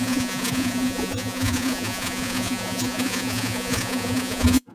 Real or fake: fake